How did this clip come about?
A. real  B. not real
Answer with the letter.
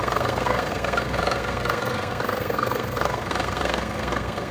B